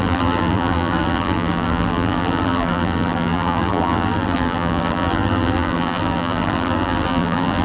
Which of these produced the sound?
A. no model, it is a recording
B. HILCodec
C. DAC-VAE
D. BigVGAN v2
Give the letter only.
D